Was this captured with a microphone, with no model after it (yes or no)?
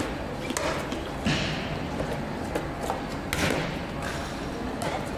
yes